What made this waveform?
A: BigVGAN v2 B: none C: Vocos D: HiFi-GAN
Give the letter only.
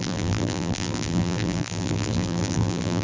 A